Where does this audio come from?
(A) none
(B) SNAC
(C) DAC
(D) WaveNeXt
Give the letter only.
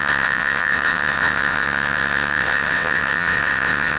D